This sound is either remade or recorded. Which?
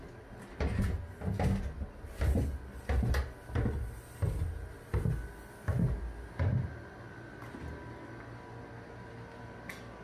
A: recorded